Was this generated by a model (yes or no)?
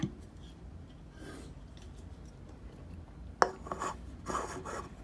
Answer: no